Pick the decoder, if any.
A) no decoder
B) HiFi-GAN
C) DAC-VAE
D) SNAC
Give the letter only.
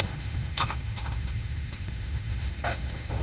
C